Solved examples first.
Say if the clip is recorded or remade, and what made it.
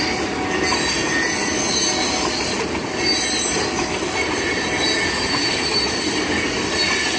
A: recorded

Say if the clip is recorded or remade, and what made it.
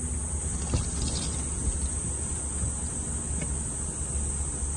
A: recorded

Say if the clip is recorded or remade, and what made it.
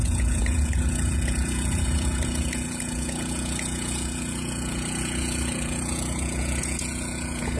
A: remade, vocoder, Vocos